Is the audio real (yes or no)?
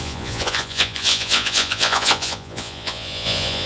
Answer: no